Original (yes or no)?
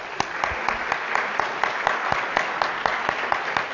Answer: yes